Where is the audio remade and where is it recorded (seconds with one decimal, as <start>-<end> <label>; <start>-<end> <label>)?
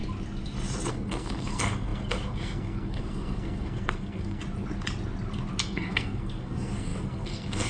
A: 0.0-0.9 recorded; 0.9-4.4 remade; 4.4-5.6 recorded; 5.6-7.7 remade